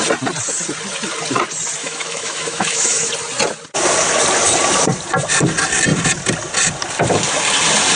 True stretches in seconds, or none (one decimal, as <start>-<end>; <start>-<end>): 0.0-1.8; 3.1-8.0